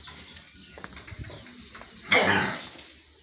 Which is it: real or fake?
real